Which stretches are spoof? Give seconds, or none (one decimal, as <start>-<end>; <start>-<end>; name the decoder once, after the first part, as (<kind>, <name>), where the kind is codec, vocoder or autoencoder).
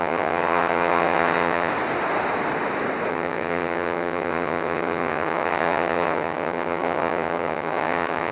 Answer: 0.0-1.7 (vocoder, HiFi-GAN); 3.1-8.3